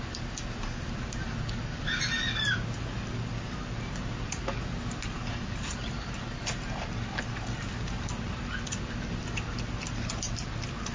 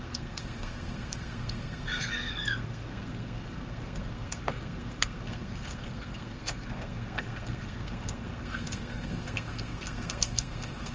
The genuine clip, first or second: first